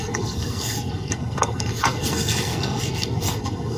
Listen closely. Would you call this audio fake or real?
fake